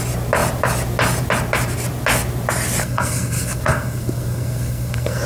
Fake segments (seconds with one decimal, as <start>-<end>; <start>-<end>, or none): 2.8-5.3